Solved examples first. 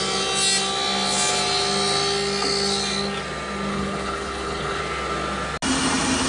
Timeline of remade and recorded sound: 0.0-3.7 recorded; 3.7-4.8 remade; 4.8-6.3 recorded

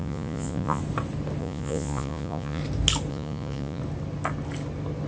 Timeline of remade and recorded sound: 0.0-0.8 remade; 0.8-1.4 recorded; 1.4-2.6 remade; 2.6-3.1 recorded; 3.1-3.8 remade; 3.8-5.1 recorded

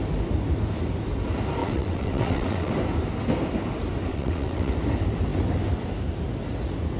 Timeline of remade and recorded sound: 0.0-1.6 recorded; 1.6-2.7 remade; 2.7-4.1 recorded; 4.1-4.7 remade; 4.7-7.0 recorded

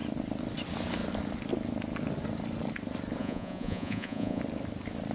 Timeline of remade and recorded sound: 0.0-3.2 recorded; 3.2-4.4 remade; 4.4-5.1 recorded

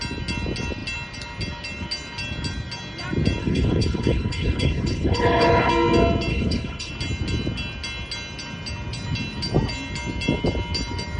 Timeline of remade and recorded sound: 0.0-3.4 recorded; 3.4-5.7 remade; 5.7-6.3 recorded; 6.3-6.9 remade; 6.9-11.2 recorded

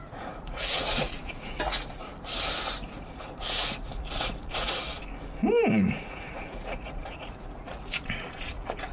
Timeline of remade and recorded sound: 0.0-2.1 remade; 2.1-2.9 recorded; 2.9-5.0 remade; 5.0-5.7 recorded; 5.7-8.9 remade